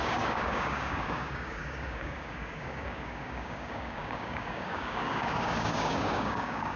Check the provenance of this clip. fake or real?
fake